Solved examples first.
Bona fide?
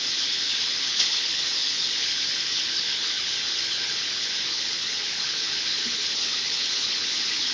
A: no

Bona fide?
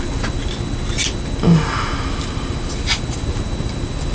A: yes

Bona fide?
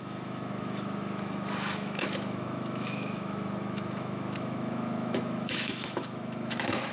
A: no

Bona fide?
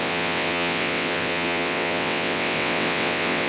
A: no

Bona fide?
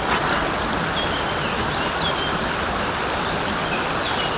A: yes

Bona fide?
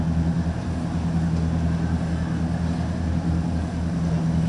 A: yes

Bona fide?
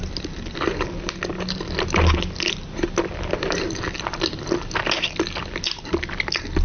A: yes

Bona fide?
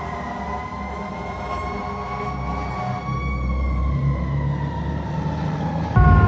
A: yes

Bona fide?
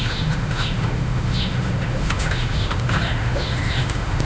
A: no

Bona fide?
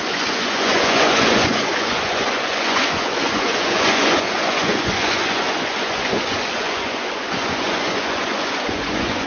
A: no